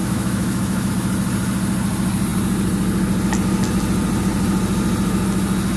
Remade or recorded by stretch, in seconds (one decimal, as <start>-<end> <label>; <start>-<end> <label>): 0.0-0.9 remade; 0.9-5.8 recorded